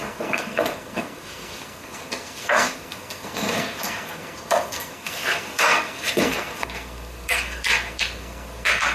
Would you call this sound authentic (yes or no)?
no